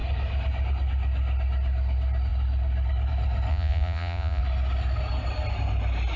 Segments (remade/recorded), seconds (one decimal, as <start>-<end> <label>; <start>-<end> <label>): 0.0-3.5 recorded; 3.5-4.4 remade; 4.4-6.2 recorded